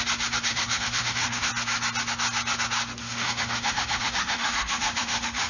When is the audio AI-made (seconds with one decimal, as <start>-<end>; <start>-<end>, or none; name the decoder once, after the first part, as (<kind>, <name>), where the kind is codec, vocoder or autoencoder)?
0.5-1.5 (autoencoder, DAC-VAE); 3.0-5.5